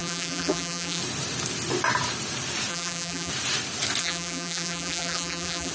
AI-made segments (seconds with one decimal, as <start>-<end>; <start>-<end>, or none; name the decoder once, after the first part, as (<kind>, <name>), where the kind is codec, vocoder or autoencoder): 0.0-1.0 (vocoder, BigVGAN v2); 2.7-3.3; 4.0-5.7